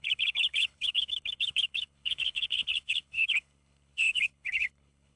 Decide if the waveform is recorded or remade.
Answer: remade